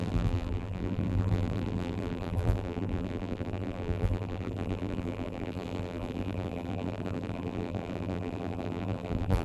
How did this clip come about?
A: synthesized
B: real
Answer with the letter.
A